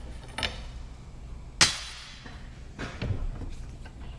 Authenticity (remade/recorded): recorded